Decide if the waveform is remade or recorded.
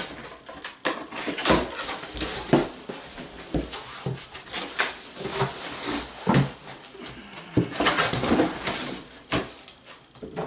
recorded